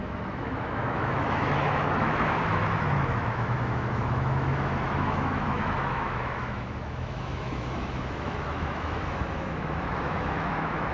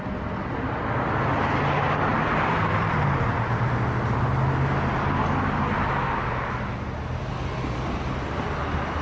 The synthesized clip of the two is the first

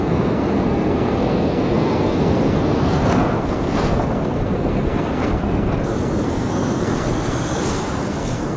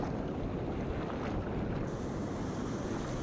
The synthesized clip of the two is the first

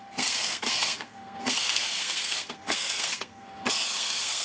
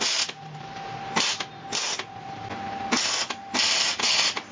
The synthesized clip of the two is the first